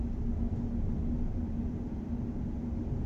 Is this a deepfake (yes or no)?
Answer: no